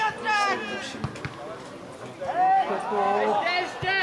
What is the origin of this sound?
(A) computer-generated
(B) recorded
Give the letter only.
B